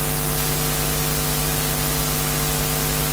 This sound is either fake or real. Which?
real